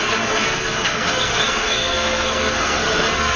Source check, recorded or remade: remade